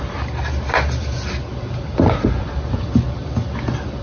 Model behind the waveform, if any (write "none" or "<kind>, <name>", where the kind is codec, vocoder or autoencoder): none